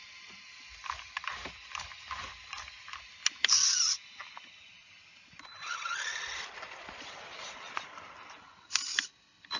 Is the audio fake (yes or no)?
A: no